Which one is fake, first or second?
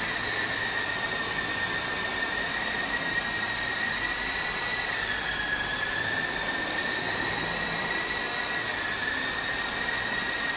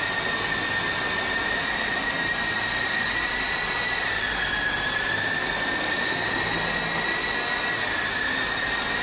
first